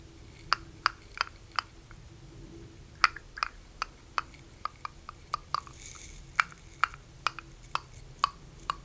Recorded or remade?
recorded